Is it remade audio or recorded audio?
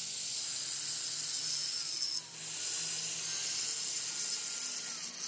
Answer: recorded